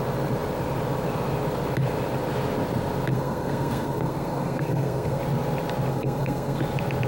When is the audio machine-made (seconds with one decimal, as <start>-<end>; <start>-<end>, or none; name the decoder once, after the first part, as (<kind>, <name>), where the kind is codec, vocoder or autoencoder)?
3.1-5.2 (codec, SNAC); 5.9-6.6